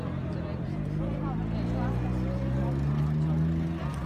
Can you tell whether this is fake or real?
real